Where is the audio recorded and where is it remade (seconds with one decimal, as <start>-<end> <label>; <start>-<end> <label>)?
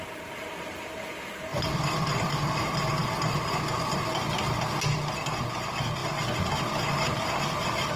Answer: 0.0-1.5 recorded; 1.5-2.6 remade; 2.6-8.0 recorded